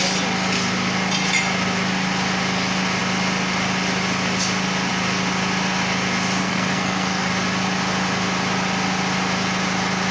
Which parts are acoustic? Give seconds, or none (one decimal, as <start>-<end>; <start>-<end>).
0.0-6.4; 7.3-10.1